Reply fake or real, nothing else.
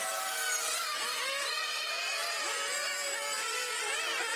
real